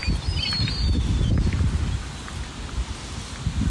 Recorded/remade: recorded